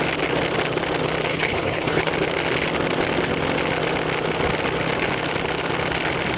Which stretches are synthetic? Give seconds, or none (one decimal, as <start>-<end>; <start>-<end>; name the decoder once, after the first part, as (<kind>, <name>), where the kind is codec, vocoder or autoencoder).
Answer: 1.3-2.1 (codec, HILCodec)